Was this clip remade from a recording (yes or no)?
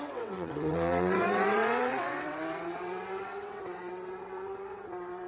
yes